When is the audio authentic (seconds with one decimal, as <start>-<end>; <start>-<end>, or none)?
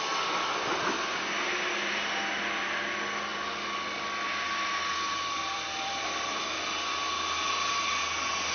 0.0-5.4; 6.5-8.5